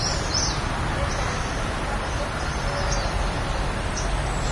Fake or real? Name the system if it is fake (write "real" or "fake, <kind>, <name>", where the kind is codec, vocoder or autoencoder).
real